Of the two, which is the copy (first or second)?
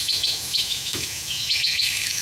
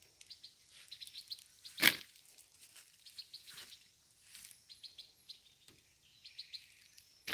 first